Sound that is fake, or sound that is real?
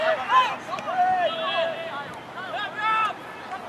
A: real